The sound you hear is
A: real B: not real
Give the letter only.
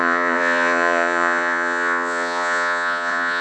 B